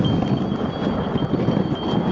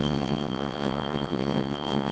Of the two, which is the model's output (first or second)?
second